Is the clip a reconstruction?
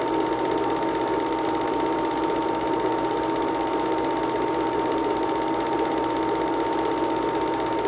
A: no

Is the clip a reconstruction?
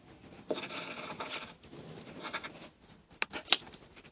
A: no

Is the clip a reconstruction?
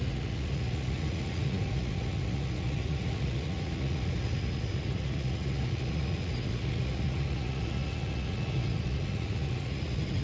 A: yes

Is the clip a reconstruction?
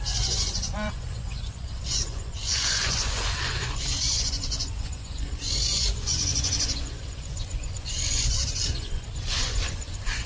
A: yes